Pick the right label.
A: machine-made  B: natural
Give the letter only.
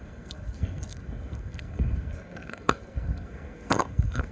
A